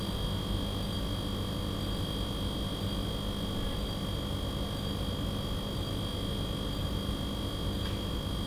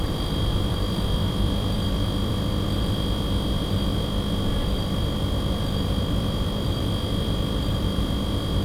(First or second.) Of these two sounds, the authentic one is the first